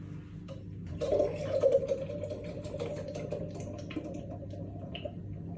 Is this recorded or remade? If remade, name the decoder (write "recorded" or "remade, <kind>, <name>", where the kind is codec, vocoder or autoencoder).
recorded